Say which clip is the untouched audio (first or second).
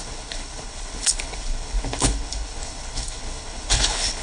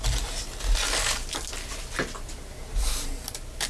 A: second